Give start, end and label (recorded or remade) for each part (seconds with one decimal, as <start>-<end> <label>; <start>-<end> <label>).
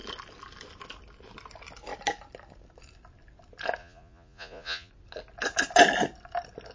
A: 0.0-3.8 recorded; 3.8-4.9 remade; 4.9-6.7 recorded